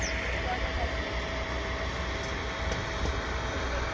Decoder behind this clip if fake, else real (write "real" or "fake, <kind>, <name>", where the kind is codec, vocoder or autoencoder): real